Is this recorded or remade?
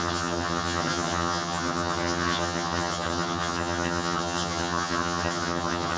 remade